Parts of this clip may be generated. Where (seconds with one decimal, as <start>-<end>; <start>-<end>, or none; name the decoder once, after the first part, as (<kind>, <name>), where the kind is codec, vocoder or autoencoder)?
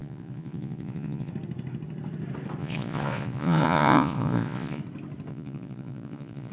0.0-1.3 (vocoder, Vocos); 2.6-4.8; 5.3-6.5